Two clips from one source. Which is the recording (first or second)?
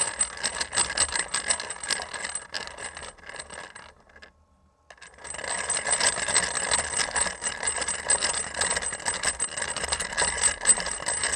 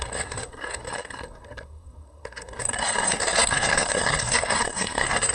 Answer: first